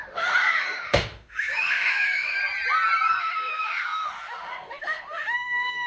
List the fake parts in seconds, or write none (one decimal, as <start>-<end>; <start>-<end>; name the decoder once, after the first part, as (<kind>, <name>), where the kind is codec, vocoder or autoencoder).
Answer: 0.0-2.4 (autoencoder, DAC-VAE); 3.2-5.9